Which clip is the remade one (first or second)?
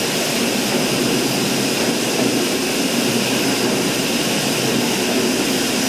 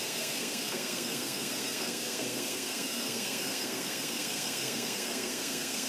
second